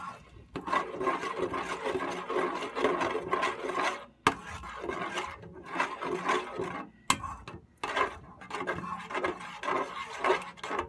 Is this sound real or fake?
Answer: real